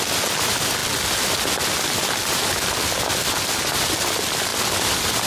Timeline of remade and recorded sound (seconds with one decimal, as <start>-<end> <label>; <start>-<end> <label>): 0.0-5.3 recorded